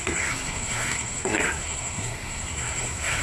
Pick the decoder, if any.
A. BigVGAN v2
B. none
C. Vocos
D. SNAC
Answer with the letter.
D